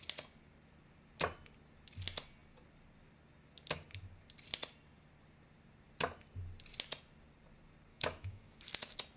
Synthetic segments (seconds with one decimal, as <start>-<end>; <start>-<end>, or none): 7.9-8.6